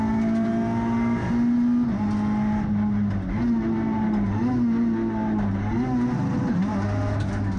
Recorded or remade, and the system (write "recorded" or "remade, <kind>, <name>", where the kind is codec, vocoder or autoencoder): recorded